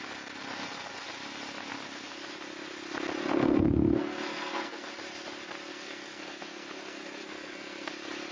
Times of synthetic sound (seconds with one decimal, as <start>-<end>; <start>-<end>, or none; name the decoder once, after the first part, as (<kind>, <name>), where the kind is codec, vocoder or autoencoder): 3.2-4.9 (codec, SNAC); 5.7-7.9